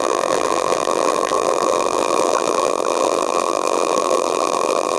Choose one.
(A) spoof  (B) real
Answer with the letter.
A